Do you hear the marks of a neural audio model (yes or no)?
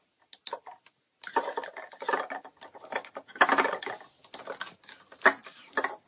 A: no